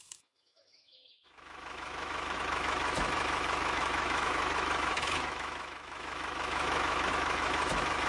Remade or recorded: remade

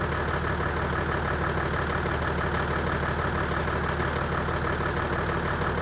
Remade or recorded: recorded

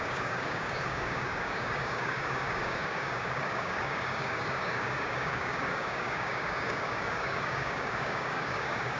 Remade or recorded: remade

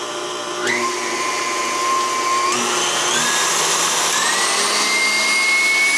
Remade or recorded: recorded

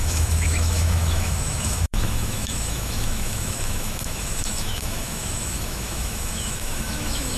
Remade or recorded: remade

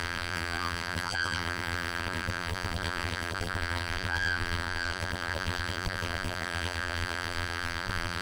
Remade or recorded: remade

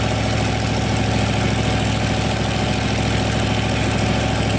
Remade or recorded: recorded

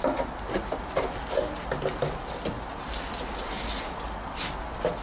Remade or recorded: recorded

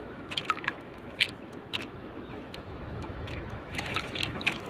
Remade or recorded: remade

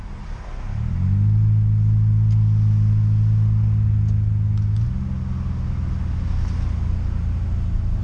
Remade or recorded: recorded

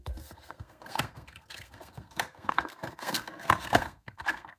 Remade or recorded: remade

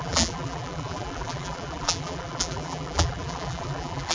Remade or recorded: remade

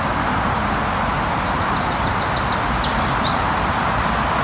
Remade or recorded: recorded